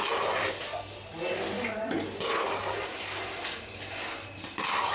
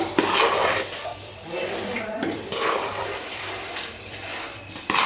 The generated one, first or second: second